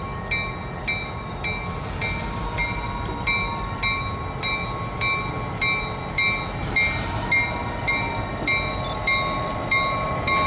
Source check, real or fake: real